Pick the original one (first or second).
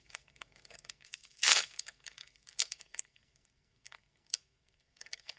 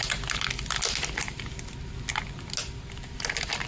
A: second